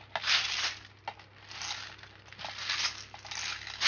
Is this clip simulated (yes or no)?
no